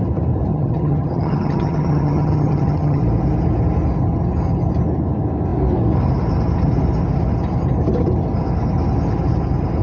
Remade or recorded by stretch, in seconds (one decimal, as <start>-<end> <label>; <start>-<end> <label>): 0.0-0.5 recorded; 0.5-3.0 remade; 3.0-9.8 recorded